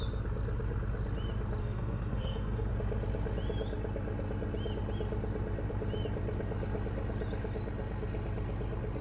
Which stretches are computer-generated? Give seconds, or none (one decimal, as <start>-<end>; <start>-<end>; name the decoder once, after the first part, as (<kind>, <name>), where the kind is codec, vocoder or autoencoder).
1.6-2.7 (codec, SNAC)